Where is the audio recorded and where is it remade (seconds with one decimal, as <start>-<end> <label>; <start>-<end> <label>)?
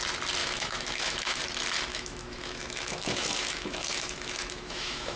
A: 0.0-0.4 recorded; 0.4-1.4 remade; 1.4-1.9 recorded; 1.9-5.2 remade